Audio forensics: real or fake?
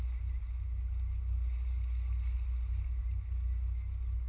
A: real